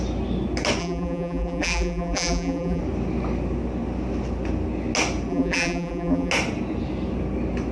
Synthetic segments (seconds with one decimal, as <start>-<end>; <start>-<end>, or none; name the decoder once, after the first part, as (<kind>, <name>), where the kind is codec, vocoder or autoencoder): 0.8-2.8 (vocoder, BigVGAN v2); 5.3-6.3